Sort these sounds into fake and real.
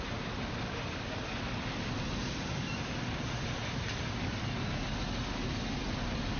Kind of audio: real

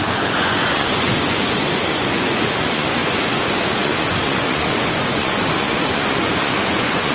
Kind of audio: fake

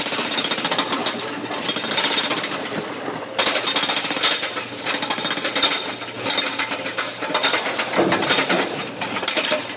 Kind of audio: real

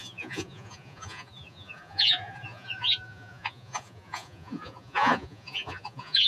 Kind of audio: fake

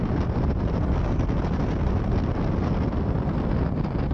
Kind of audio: real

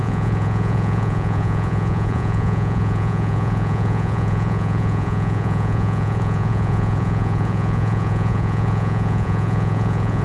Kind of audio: fake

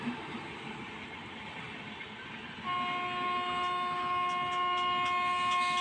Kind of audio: real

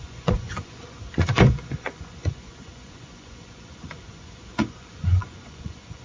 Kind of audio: fake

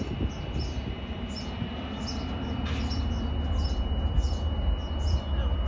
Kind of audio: real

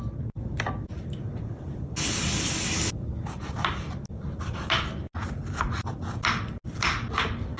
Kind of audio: real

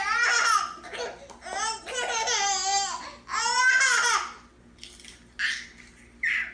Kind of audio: real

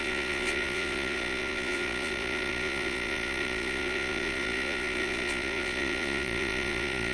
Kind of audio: fake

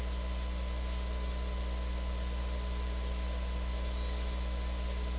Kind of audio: real